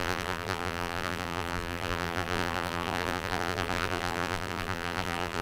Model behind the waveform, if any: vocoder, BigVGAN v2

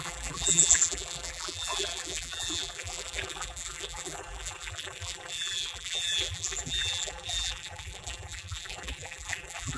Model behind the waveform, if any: vocoder, BigVGAN v2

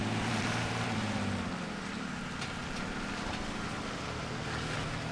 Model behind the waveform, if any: vocoder, BigVGAN v2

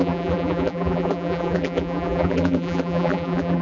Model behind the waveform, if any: vocoder, BigVGAN v2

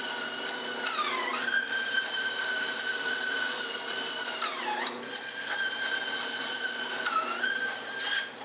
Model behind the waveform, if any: none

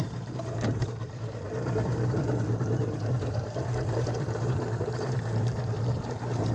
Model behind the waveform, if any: vocoder, BigVGAN v2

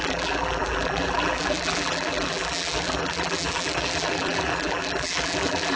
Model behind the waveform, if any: vocoder, BigVGAN v2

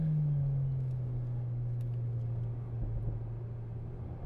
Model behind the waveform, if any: none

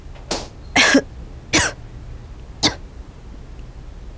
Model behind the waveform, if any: none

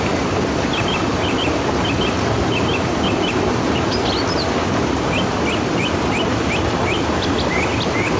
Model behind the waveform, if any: vocoder, BigVGAN v2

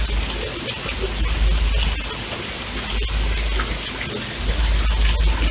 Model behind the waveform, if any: none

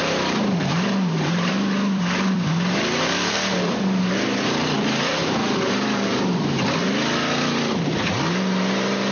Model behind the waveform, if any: vocoder, BigVGAN v2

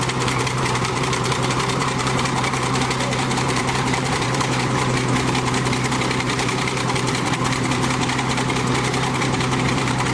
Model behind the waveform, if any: vocoder, BigVGAN v2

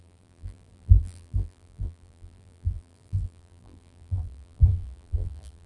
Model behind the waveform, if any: vocoder, BigVGAN v2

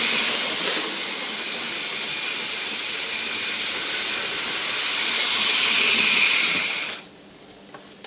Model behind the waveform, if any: none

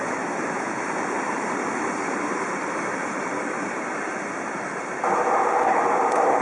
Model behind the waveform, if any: vocoder, BigVGAN v2